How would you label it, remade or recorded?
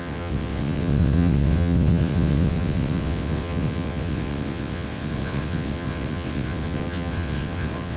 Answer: remade